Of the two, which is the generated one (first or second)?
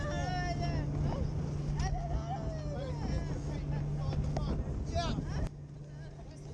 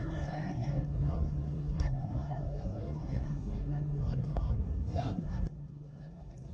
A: second